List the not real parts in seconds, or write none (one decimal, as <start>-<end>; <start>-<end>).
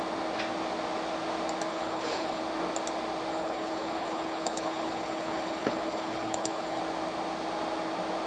1.7-2.4; 3.3-6.8